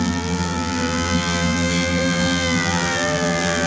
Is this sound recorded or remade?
remade